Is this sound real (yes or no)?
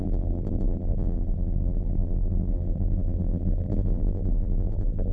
no